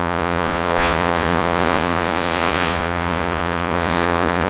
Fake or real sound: fake